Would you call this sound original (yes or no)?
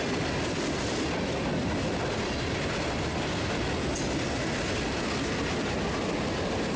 yes